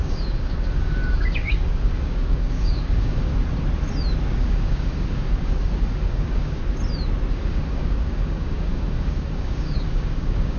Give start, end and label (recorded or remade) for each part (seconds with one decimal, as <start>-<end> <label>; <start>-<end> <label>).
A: 0.0-3.3 remade; 3.3-4.4 recorded; 4.4-6.6 remade; 6.6-7.3 recorded; 7.3-10.6 remade